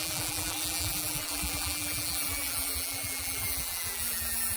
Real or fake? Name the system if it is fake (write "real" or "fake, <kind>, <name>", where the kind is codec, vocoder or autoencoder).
fake, vocoder, BigVGAN v2